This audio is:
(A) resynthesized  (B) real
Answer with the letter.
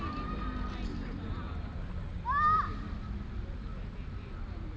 B